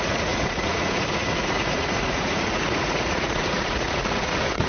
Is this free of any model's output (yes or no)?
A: no